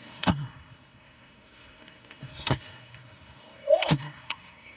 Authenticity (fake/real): fake